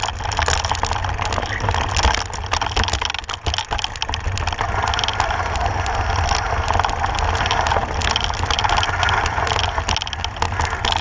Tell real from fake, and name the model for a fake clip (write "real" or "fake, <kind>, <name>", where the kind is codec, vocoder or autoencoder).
real